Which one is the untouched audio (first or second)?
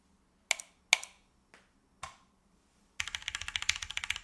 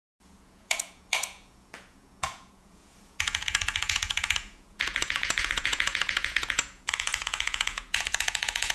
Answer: first